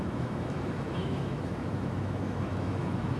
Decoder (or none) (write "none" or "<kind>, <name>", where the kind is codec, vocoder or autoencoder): autoencoder, DAC-VAE